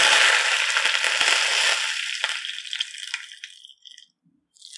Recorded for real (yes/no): yes